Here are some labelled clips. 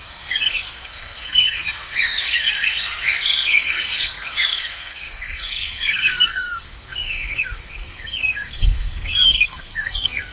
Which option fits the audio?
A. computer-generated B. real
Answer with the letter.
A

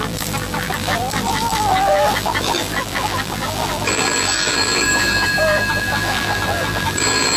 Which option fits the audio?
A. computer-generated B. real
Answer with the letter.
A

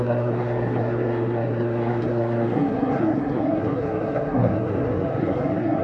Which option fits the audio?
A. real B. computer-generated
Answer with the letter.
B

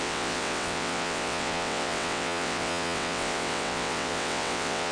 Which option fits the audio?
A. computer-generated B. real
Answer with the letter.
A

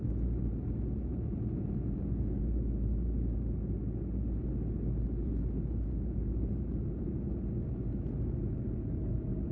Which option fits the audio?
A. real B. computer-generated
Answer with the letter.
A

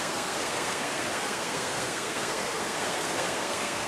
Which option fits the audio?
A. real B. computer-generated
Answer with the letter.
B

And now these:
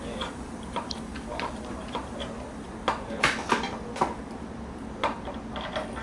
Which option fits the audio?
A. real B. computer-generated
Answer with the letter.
A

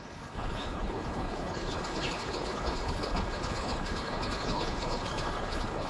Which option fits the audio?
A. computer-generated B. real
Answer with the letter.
A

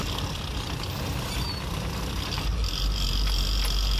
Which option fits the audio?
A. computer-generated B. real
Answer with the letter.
B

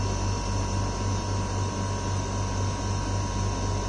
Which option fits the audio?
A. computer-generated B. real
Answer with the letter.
B